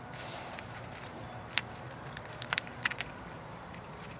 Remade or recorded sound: remade